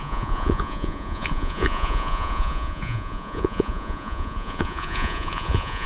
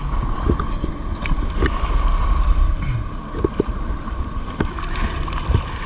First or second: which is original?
second